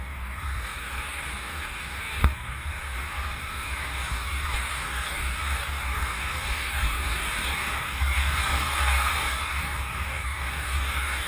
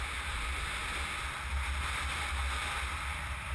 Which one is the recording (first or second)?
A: second